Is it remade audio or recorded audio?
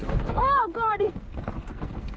remade